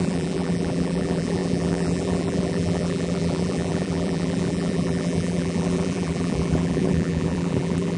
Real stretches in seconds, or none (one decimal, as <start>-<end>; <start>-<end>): none